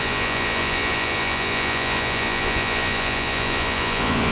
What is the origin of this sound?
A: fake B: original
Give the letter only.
A